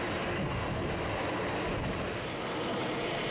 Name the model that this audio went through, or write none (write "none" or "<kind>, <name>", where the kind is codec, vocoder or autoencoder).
none